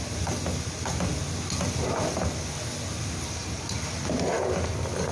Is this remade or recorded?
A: recorded